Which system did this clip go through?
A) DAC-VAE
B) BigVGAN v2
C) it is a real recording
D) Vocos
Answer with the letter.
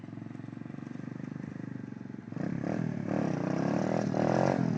C